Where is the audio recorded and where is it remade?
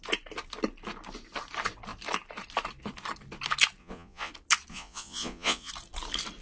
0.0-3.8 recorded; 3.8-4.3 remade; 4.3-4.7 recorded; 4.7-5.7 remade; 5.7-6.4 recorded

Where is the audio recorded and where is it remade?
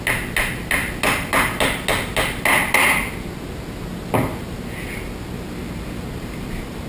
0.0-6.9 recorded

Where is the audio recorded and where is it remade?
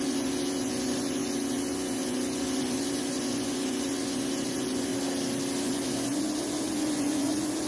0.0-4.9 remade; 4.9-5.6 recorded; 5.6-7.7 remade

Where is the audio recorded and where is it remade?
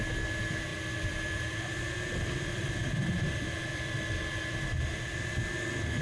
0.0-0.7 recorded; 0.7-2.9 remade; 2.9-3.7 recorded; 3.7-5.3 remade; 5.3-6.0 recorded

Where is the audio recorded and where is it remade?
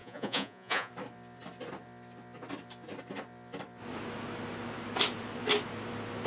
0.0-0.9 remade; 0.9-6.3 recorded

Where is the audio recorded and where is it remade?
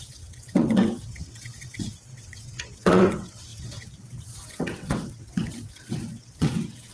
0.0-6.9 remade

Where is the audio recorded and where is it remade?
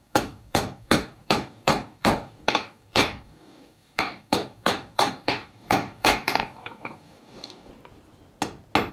0.0-7.7 remade; 7.7-8.9 recorded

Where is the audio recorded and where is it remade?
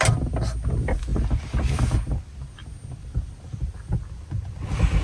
0.0-5.0 recorded